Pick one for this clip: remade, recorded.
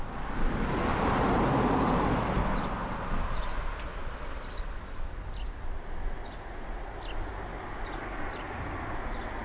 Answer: recorded